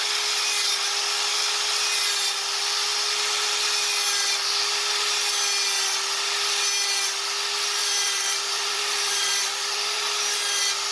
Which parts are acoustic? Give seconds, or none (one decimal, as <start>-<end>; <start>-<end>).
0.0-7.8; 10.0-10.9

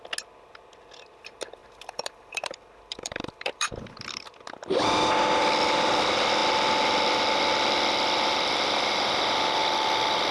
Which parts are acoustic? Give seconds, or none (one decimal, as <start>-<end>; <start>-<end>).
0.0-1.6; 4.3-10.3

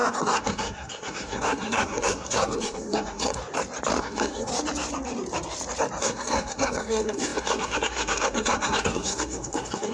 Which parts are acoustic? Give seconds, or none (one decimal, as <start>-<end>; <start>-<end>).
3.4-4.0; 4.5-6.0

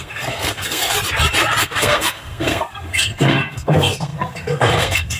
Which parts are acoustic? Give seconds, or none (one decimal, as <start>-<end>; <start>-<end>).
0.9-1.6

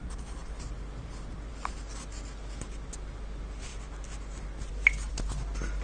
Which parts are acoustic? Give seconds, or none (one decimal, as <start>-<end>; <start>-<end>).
0.0-5.8